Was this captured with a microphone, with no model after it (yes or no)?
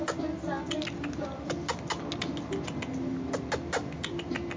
yes